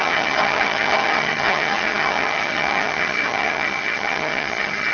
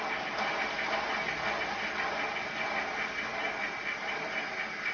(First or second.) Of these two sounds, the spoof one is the first